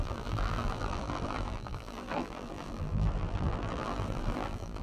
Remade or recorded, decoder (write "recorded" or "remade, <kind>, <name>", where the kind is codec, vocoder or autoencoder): remade, vocoder, BigVGAN v2